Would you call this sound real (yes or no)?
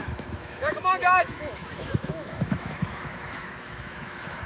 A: no